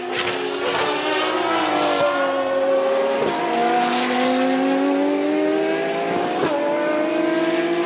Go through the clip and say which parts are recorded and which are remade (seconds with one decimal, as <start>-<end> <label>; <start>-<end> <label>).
0.0-7.9 recorded